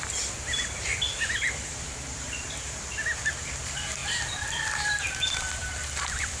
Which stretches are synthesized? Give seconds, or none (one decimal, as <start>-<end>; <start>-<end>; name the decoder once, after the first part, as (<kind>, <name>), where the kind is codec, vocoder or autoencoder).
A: 0.0-0.9 (vocoder, BigVGAN v2); 1.5-6.4